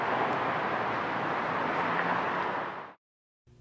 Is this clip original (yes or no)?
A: yes